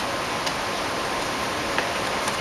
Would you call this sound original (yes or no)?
yes